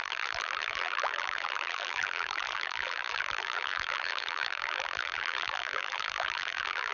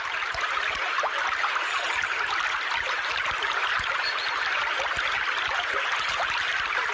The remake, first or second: first